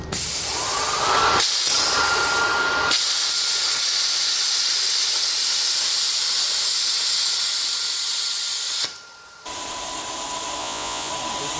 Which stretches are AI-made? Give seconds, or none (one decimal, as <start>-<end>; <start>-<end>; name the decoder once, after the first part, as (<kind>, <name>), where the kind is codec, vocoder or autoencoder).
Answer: 10.6-11.1 (vocoder, Vocos)

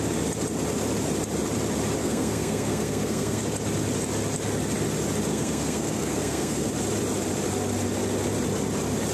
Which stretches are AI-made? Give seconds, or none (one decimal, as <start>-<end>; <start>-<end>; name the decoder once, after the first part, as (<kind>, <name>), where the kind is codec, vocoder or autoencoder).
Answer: 2.0-3.4 (codec, SNAC); 5.3-6.7

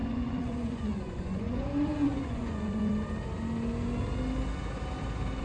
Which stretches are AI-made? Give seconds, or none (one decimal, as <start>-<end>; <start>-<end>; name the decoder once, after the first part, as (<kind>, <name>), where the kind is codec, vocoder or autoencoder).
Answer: 0.0-2.9 (vocoder, Vocos)

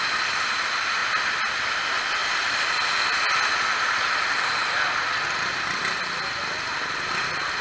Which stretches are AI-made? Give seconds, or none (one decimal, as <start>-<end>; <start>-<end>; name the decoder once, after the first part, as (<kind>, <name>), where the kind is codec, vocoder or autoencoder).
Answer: none

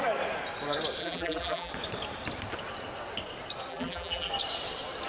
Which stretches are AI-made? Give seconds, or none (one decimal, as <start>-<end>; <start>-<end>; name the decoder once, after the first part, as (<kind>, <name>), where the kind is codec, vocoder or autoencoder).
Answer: 1.0-1.7 (vocoder, BigVGAN v2); 3.7-4.3